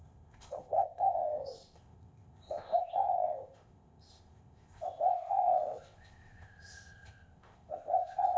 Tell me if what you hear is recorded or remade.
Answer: remade